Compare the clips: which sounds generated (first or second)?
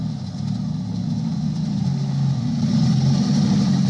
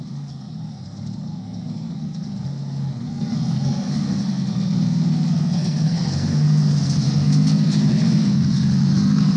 second